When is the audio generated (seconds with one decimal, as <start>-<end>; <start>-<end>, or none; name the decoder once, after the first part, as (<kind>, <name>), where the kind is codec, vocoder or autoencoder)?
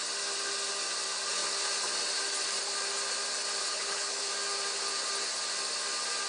3.6-4.3 (codec, HILCodec)